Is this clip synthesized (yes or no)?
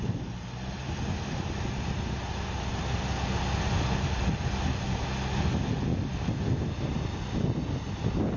no